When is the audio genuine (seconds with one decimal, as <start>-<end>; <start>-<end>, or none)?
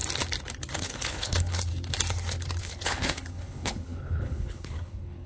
0.0-0.7; 1.7-2.6